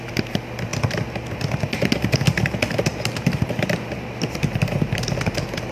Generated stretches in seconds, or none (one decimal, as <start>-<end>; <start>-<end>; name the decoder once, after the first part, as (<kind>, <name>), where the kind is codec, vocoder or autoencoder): none